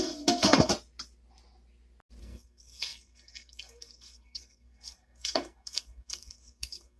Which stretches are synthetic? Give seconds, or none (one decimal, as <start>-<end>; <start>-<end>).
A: 0.0-0.7; 2.2-7.0